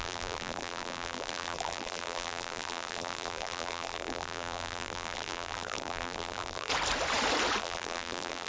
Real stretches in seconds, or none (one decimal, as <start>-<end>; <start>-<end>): 6.7-7.6

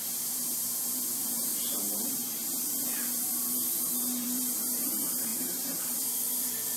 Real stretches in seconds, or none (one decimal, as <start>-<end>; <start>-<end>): none

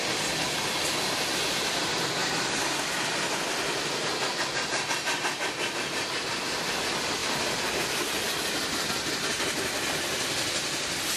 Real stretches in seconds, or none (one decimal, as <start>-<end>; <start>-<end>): 0.0-2.2; 3.2-7.2; 7.7-11.2

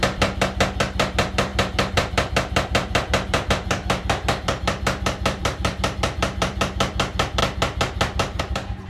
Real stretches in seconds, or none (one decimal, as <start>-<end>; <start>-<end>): 7.4-8.4

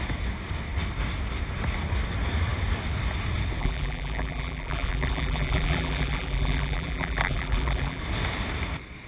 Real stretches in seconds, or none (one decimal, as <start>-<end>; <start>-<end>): 0.0-3.6; 8.0-9.1

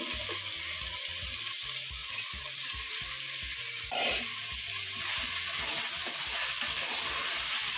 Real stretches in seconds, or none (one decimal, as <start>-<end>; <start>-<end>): 0.0-2.0; 5.0-7.8

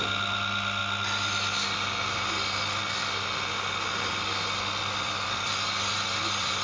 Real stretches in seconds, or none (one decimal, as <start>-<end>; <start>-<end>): 0.8-4.8

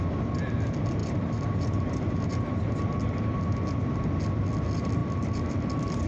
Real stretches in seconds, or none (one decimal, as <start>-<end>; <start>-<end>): 0.0-1.0; 1.6-6.1